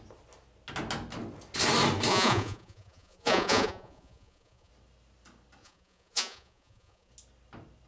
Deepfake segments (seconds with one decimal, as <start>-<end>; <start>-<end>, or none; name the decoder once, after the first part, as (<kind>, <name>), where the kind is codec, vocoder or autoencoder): 2.1-4.7 (vocoder, Vocos); 5.6-7.1